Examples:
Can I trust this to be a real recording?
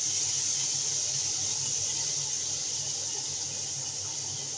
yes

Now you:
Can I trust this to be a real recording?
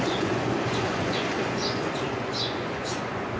no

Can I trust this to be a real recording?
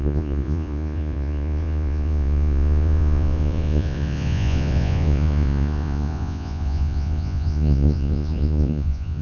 no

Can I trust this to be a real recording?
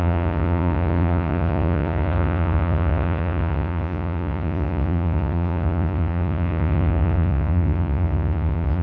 no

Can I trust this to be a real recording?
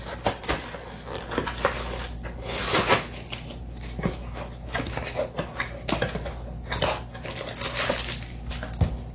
yes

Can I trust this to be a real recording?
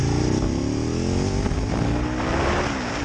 yes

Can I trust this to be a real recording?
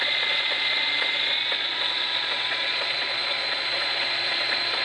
no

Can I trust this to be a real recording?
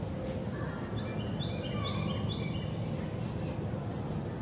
yes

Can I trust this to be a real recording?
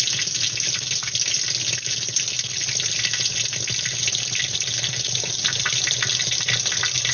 yes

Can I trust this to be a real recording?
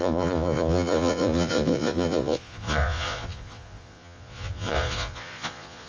no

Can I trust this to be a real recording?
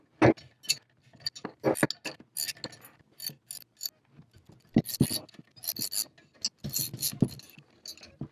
yes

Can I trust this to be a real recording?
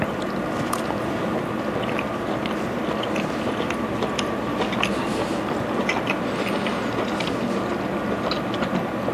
yes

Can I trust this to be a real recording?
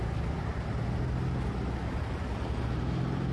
yes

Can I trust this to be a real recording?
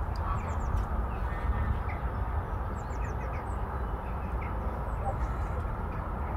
yes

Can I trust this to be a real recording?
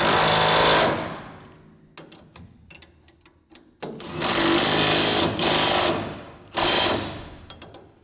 yes